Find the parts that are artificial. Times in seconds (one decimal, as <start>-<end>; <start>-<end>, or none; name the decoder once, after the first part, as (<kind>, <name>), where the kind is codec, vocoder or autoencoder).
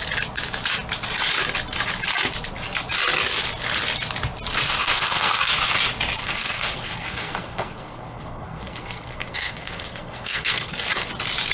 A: 4.8-5.5 (codec, SNAC); 6.2-11.1